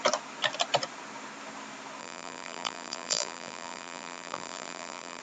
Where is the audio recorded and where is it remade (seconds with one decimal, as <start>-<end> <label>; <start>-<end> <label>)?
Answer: 0.0-2.0 recorded; 2.0-5.2 remade